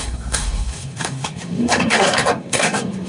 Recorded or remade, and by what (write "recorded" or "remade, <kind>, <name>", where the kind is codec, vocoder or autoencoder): remade, codec, SNAC